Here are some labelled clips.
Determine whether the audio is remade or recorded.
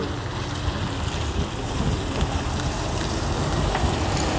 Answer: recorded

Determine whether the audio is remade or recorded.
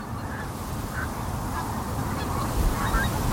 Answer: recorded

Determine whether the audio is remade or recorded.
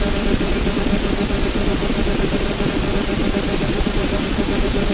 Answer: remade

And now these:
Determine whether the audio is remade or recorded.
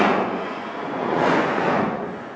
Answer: remade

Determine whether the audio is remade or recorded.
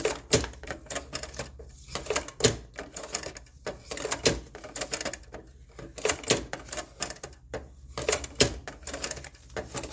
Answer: recorded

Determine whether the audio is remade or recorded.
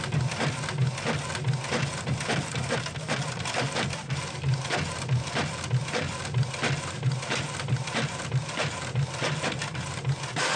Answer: recorded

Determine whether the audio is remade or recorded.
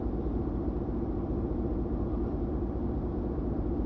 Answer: recorded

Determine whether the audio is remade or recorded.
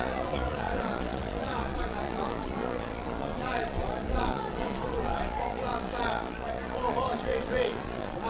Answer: remade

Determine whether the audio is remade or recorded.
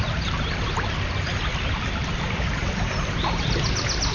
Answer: recorded